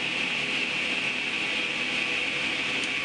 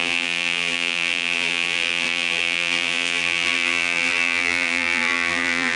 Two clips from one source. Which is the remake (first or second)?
second